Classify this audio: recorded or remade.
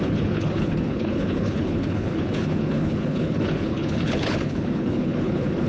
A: remade